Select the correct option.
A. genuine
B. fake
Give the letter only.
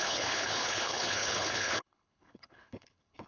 B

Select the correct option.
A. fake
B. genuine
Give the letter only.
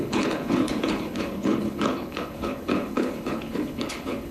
A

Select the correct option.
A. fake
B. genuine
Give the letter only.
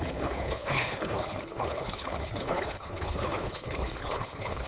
A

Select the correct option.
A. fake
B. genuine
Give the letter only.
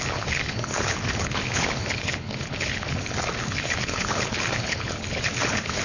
A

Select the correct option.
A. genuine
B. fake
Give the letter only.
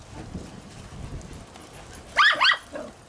A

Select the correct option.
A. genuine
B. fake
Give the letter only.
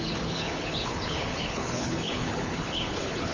B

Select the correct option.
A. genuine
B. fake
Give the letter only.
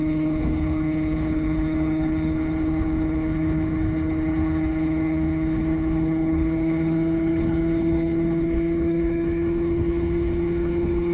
B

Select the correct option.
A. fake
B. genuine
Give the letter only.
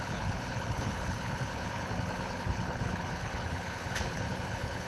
A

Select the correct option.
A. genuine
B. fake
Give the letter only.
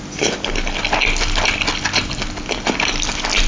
A